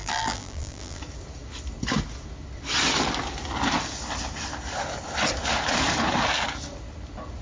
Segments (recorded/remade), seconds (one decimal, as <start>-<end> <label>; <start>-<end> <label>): 0.0-1.0 remade; 1.0-7.4 recorded